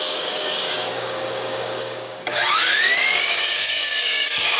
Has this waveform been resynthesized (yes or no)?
yes